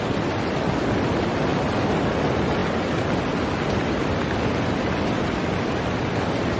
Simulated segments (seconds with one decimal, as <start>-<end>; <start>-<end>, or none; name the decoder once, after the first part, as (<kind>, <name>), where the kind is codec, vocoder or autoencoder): none